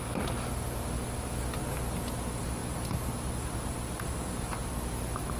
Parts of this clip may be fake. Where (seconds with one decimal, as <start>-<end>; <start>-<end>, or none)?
none